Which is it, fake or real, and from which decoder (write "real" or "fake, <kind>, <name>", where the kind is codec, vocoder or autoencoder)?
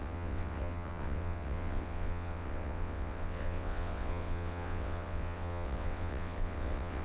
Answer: fake, vocoder, WaveNeXt